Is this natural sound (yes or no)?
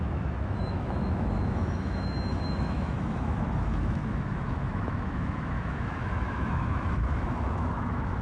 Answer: no